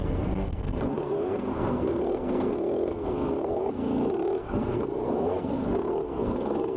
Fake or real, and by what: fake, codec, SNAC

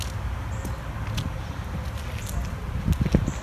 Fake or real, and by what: real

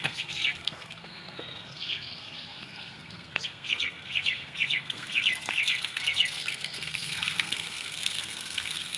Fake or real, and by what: fake, codec, SNAC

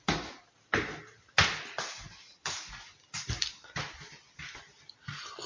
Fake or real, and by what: real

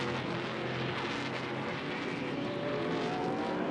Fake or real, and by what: real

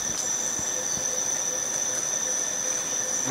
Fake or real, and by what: real